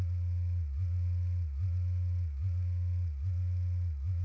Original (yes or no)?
yes